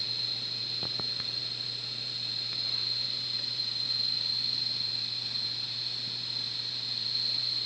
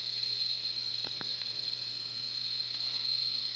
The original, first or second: first